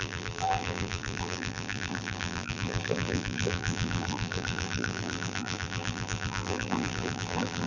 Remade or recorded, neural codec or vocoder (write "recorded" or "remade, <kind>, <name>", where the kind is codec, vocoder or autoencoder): remade, vocoder, BigVGAN v2